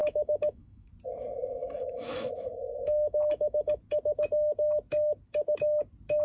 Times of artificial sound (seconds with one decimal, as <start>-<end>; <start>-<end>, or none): 0.0-0.9; 1.4-3.8